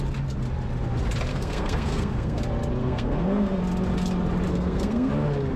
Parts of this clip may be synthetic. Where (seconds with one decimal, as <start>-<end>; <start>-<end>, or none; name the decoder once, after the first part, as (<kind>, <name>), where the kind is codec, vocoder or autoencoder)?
1.3-2.4 (codec, SNAC); 2.8-3.6; 4.5-5.1